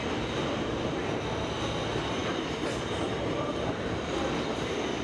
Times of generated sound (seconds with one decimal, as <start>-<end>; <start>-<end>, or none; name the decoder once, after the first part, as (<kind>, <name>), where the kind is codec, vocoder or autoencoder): 2.2-2.7 (vocoder, BigVGAN v2)